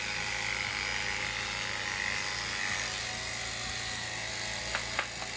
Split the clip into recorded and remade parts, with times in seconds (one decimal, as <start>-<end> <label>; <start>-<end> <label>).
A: 0.0-5.4 recorded